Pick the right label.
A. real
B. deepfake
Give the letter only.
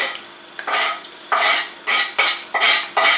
A